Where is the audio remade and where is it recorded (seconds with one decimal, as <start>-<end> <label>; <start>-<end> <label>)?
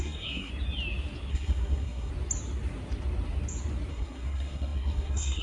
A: 0.0-0.5 remade; 0.5-1.3 recorded; 1.3-2.1 remade; 2.1-3.9 recorded; 3.9-5.4 remade